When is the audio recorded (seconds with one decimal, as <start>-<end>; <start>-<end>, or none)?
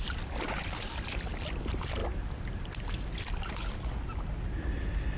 0.0-5.2